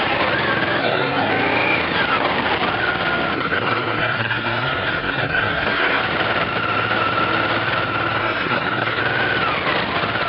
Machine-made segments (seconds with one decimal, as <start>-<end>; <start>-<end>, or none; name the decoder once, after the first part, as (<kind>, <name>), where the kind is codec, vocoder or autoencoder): 0.8-1.3 (codec, SNAC); 3.3-6.0; 8.2-9.0